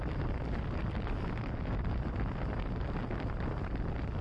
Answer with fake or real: real